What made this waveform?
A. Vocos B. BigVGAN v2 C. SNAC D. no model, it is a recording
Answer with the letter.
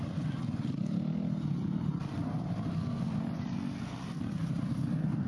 D